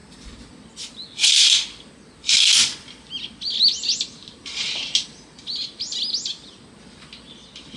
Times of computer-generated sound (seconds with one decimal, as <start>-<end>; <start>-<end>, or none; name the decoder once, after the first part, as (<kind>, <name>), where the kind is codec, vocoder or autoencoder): none